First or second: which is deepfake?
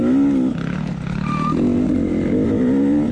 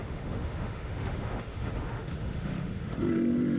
second